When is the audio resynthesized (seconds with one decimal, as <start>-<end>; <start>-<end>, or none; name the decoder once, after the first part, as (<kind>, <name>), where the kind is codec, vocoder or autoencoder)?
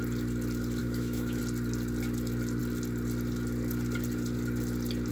0.8-1.4 (autoencoder, DAC-VAE)